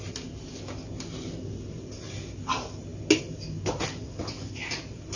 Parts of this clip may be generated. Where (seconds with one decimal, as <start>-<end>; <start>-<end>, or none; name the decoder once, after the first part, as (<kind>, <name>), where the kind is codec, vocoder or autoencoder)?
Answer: none